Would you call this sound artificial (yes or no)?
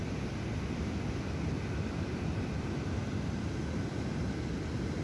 no